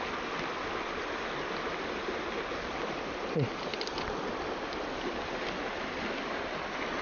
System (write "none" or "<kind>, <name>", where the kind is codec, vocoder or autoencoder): none